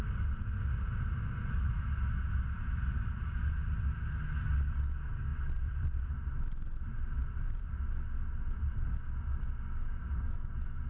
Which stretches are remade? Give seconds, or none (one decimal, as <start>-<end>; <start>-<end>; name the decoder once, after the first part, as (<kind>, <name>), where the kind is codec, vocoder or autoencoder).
5.3-6.1 (vocoder, BigVGAN v2); 7.2-7.9